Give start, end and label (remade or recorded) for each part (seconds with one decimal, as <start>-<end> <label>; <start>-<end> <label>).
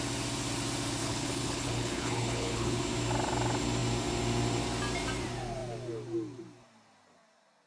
0.0-1.0 recorded; 1.0-2.8 remade; 2.8-7.7 recorded